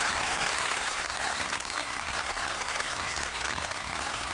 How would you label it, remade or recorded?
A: remade